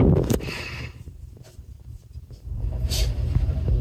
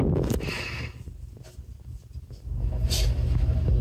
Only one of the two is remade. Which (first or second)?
first